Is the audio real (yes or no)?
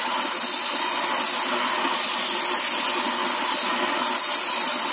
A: yes